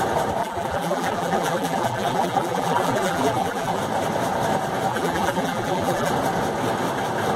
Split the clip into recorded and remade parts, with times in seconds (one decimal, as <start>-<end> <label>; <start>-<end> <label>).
0.0-0.4 recorded; 0.4-3.8 remade; 3.8-4.9 recorded; 4.9-6.1 remade; 6.1-7.4 recorded